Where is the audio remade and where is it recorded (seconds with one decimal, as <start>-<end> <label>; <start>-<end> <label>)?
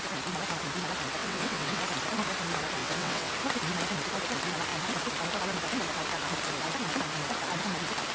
0.0-1.2 recorded; 1.2-1.8 remade; 1.8-2.8 recorded; 2.8-3.3 remade; 3.3-8.1 recorded